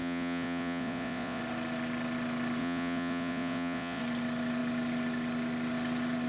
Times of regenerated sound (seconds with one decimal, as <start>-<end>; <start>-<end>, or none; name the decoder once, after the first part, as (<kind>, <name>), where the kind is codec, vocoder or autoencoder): 0.0-1.4 (vocoder, Vocos); 2.6-4.0